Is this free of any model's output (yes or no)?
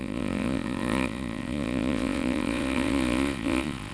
no